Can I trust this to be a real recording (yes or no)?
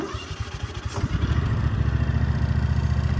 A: yes